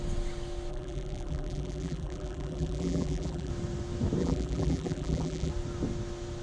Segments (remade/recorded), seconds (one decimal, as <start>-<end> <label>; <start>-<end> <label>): 0.0-0.7 recorded; 0.7-3.5 remade; 3.5-4.2 recorded; 4.2-5.5 remade; 5.5-6.4 recorded